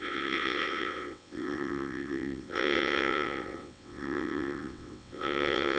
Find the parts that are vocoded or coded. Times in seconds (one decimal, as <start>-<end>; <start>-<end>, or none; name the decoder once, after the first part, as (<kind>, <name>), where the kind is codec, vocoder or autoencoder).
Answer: 0.0-5.8 (vocoder, WaveNeXt)